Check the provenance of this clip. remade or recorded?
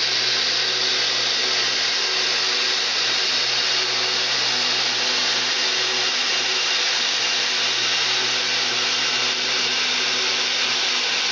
recorded